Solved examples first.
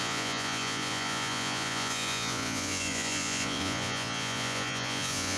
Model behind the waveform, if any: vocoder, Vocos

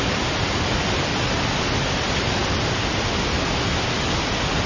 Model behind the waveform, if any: none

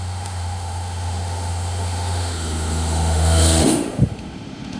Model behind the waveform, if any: autoencoder, DAC-VAE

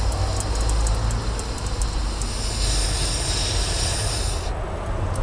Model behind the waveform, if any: none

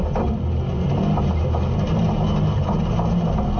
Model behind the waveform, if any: none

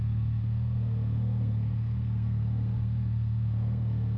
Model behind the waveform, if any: codec, SNAC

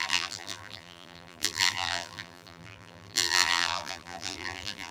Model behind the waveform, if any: vocoder, BigVGAN v2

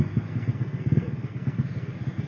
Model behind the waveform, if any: codec, SNAC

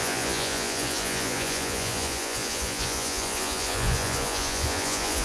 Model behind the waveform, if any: vocoder, Vocos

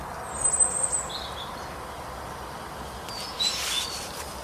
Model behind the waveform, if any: none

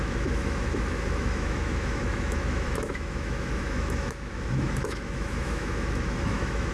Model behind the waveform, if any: autoencoder, DAC-VAE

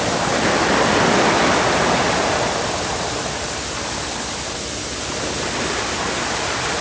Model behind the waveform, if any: none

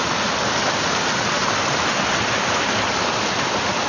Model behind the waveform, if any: none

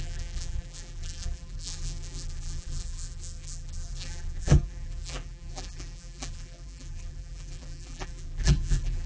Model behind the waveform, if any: vocoder, BigVGAN v2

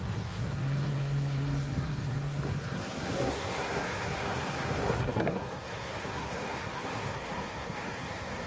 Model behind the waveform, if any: codec, SNAC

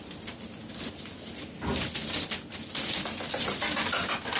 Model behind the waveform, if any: none